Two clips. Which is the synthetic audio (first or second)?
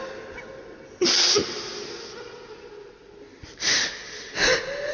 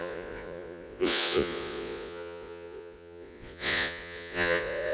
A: second